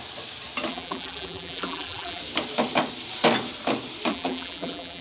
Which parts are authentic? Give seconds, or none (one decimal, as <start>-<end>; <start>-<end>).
0.0-0.7; 2.2-4.1